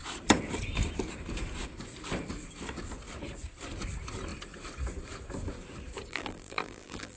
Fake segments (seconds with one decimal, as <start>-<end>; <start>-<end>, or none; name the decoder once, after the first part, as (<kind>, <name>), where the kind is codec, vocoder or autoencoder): 6.1-7.2 (vocoder, BigVGAN v2)